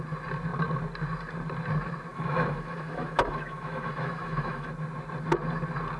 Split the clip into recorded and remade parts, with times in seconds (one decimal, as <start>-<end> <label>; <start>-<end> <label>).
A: 0.0-2.1 recorded; 2.1-4.7 remade; 4.7-6.0 recorded